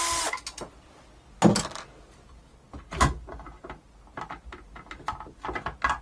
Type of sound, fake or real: real